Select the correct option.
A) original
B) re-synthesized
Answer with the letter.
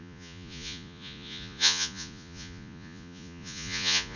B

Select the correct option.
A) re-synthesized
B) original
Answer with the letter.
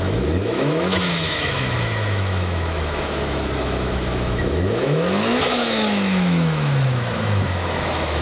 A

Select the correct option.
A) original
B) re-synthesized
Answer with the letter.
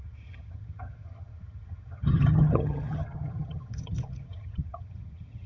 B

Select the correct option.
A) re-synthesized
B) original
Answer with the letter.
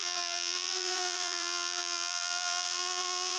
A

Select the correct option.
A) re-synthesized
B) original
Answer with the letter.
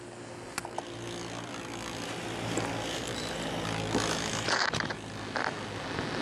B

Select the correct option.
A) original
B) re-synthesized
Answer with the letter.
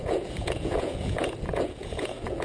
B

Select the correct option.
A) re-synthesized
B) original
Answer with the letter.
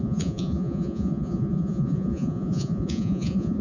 A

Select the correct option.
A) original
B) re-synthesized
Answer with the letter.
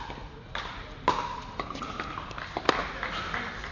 A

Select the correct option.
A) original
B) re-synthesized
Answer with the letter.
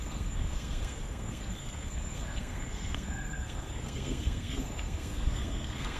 B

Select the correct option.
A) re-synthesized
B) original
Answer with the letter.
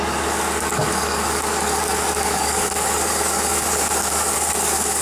A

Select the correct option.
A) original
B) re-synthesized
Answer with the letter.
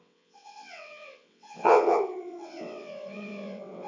B